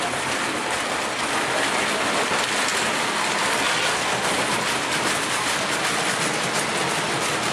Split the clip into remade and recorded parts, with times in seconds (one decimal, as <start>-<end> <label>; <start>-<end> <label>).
0.0-7.5 recorded